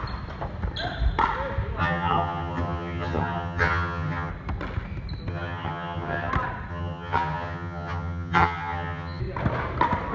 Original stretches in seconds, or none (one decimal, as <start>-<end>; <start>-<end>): 0.0-1.8; 4.3-5.3; 6.3-6.7; 9.2-10.1